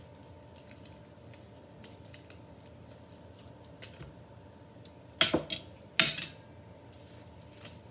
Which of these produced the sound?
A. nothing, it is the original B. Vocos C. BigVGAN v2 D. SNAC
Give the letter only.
A